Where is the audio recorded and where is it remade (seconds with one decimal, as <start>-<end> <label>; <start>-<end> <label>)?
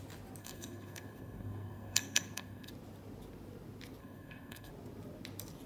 0.0-0.4 recorded; 0.4-2.7 remade; 2.7-4.0 recorded; 4.0-4.7 remade; 4.7-5.7 recorded